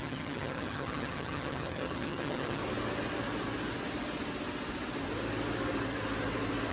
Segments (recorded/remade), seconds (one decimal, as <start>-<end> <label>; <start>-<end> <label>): 0.0-2.6 remade; 2.6-6.7 recorded